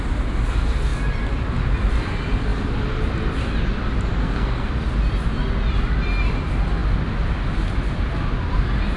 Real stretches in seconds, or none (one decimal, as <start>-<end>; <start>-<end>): 0.0-4.2; 4.7-9.0